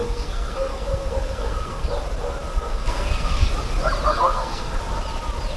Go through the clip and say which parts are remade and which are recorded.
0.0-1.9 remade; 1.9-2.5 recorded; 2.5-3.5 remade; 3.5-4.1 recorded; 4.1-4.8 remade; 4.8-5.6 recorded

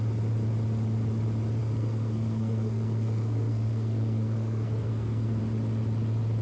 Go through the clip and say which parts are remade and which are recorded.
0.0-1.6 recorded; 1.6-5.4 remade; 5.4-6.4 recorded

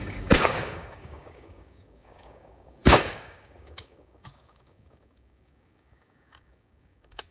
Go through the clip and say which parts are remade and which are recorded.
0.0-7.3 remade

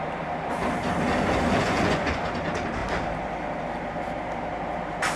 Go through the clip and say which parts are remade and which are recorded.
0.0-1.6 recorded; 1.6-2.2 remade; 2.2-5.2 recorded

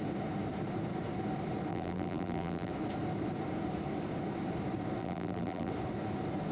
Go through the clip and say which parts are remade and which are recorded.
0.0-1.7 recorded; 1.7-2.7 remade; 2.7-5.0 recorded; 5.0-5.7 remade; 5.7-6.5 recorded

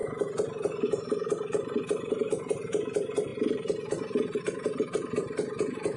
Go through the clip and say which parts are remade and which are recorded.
0.0-6.0 remade

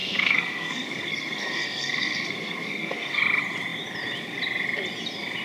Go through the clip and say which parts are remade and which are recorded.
0.0-3.2 remade; 3.2-5.4 recorded

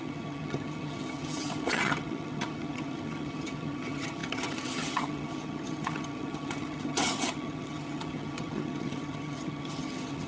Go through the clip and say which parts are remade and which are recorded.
0.0-10.3 remade